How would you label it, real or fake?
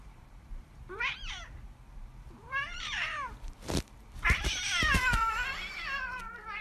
fake